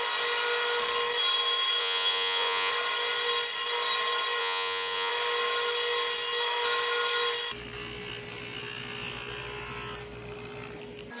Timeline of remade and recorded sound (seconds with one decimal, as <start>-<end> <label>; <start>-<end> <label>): 0.0-1.8 recorded; 1.8-2.7 remade; 2.7-4.4 recorded; 4.4-5.1 remade; 5.1-11.2 recorded